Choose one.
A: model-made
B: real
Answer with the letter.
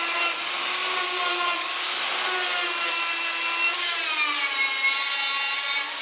B